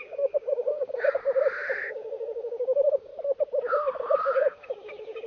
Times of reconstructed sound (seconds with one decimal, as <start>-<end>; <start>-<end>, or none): 0.0-1.2; 1.9-3.1; 4.2-5.3